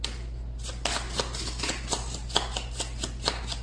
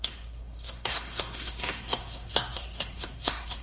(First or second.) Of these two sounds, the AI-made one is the second